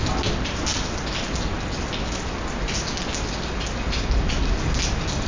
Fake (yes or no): no